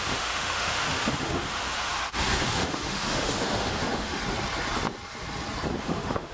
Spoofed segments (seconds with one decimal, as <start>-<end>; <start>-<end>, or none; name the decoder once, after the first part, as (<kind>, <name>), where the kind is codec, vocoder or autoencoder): 0.0-4.2 (autoencoder, DAC-VAE); 5.8-6.3